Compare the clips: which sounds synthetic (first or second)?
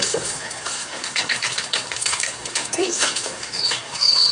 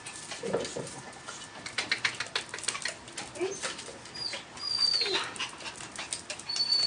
first